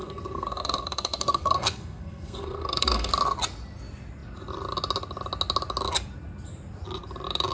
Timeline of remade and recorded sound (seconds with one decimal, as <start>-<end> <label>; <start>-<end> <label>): 0.0-3.1 remade; 3.1-7.5 recorded